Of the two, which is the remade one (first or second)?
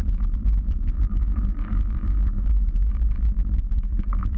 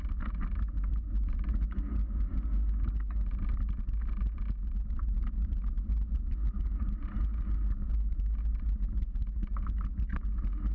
first